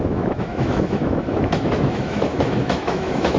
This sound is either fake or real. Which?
fake